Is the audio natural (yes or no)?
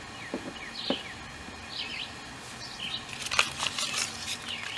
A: yes